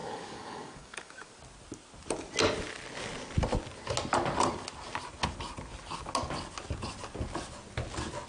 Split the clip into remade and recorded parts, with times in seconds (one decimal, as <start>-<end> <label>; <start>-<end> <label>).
0.0-1.3 remade; 1.3-8.3 recorded